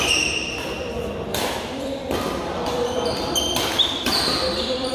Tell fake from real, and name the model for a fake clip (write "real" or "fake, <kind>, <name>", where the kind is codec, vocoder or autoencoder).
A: fake, vocoder, BigVGAN v2